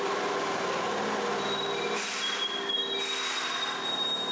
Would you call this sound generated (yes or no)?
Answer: no